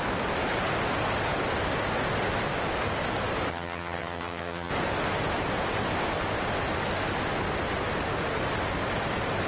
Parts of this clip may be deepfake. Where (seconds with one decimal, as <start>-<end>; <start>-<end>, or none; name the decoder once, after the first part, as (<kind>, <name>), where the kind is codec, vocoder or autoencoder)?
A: 3.5-4.7 (vocoder, HiFi-GAN)